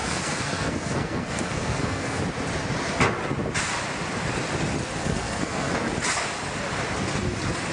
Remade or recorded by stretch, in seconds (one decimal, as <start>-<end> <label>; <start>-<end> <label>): 0.0-2.2 remade; 2.2-5.0 recorded; 5.0-5.7 remade; 5.7-7.7 recorded